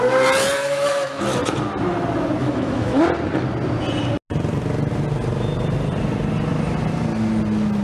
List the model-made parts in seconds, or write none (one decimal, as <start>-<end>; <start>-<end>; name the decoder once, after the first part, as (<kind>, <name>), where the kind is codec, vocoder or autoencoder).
0.6-1.2 (autoencoder, DAC-VAE); 2.4-3.0